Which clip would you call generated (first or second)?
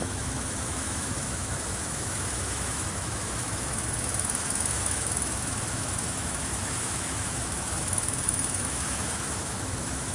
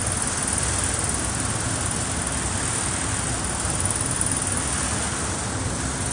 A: first